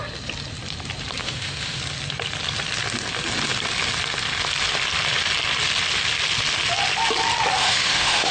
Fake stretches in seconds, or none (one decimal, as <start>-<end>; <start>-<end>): 1.2-1.8; 7.6-8.3